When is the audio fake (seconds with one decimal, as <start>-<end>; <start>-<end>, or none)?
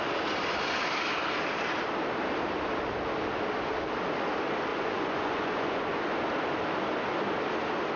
4.7-6.0